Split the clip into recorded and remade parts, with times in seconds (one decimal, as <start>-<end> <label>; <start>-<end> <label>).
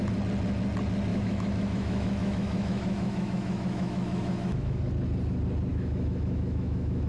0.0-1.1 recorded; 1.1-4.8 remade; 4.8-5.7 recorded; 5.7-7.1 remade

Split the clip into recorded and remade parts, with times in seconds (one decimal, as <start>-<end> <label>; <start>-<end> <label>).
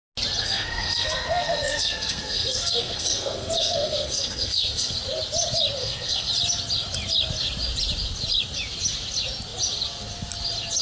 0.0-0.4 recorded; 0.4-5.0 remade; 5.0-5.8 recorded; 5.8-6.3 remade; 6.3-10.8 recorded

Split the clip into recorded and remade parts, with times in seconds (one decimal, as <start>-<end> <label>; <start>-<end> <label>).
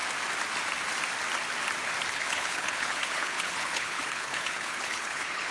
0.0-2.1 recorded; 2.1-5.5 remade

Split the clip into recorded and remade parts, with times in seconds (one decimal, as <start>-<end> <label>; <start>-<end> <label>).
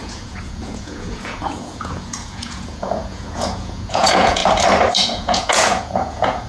0.0-4.4 remade; 4.4-4.9 recorded; 4.9-6.5 remade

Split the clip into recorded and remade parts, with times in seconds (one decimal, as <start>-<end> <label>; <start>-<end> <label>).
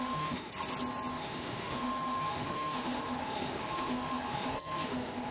0.0-0.5 remade; 0.5-1.1 recorded; 1.1-5.3 remade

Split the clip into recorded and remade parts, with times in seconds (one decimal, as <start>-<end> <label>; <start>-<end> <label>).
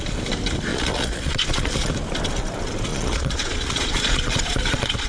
0.0-0.7 recorded; 0.7-1.9 remade; 1.9-2.9 recorded; 2.9-5.1 remade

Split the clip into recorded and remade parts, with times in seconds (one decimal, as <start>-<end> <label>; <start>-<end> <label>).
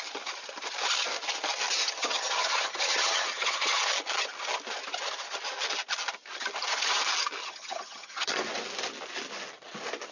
0.0-2.0 recorded; 2.0-3.8 remade; 3.8-7.4 recorded; 7.4-8.4 remade; 8.4-10.1 recorded